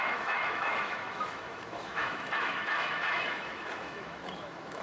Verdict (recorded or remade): remade